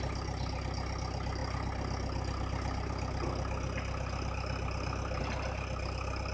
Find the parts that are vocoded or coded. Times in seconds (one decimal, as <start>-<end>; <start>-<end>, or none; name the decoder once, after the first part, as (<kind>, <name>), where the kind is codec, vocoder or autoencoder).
none